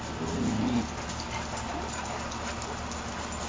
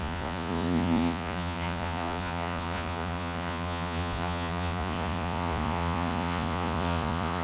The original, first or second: first